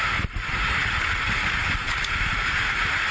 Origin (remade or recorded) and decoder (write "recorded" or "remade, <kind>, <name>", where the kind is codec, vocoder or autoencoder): remade, vocoder, BigVGAN v2